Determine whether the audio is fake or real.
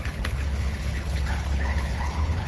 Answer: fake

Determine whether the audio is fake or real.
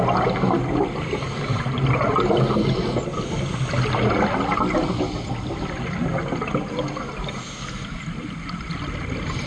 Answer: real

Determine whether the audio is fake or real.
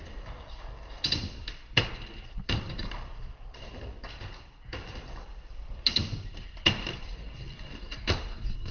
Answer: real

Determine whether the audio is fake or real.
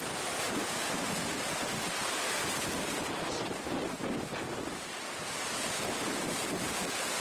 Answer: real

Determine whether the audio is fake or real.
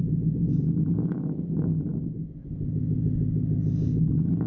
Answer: real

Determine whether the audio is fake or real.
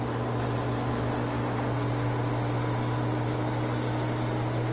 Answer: real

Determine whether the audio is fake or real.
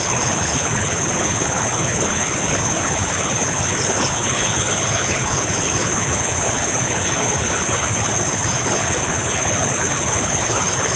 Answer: fake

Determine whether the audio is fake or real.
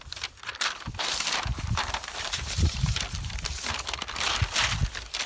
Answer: fake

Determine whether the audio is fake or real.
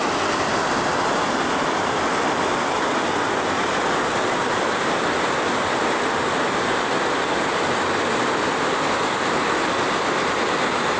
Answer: real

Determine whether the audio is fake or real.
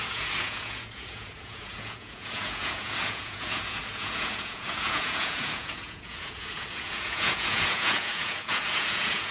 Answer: fake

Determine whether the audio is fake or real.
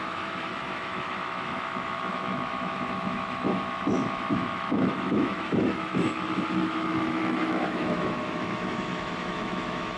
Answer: fake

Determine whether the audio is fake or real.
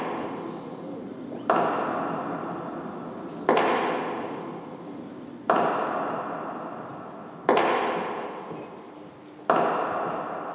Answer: real